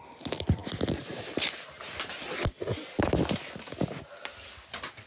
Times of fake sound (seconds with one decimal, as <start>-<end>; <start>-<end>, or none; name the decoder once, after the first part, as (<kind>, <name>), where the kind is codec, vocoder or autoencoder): none